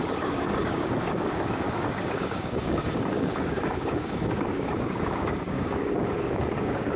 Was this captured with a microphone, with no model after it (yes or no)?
no